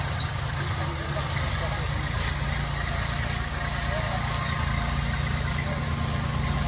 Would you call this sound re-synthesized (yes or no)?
no